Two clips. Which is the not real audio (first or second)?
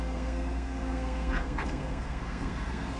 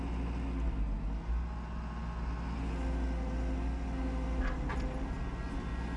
first